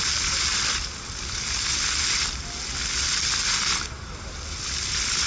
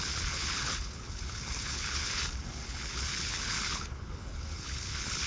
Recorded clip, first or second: first